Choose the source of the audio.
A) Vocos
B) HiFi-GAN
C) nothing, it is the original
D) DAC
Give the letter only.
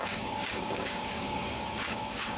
D